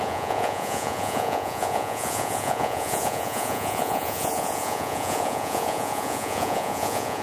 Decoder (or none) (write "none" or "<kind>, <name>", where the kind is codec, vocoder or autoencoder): vocoder, Vocos